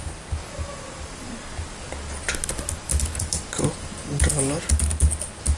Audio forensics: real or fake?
real